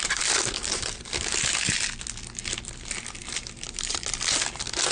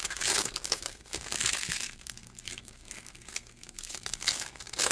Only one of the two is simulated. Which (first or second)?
second